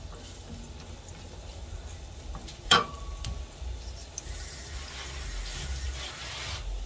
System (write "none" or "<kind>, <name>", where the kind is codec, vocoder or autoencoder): none